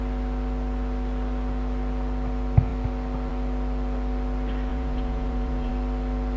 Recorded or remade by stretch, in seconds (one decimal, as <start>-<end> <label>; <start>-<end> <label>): 0.0-4.7 recorded; 4.7-5.7 remade; 5.7-6.4 recorded